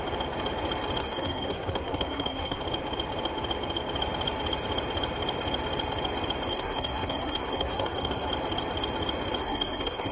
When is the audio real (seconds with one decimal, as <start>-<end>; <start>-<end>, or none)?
0.0-1.0; 2.6-6.5; 8.3-9.4